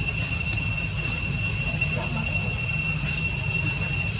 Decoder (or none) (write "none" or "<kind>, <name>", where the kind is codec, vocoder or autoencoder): none